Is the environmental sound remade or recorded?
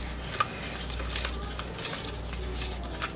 recorded